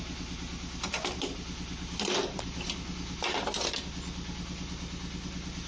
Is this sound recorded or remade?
recorded